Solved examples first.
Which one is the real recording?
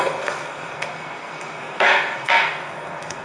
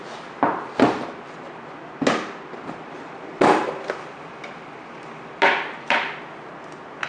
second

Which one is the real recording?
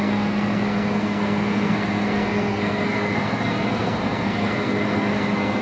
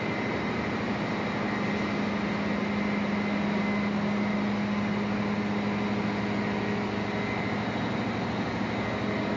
second